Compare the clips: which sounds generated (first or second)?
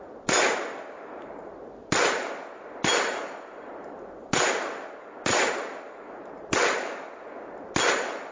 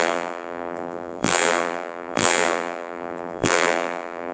second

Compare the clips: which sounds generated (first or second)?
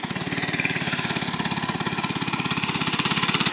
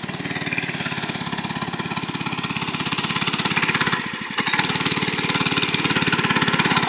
first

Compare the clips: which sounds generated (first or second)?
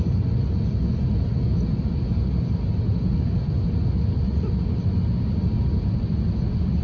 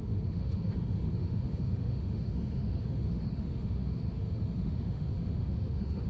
second